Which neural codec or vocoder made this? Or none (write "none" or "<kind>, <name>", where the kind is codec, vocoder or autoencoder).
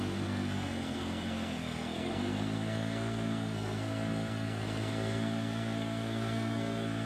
codec, SNAC